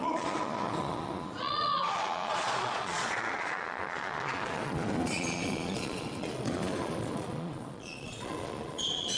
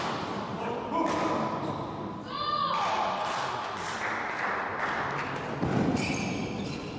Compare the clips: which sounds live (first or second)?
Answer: second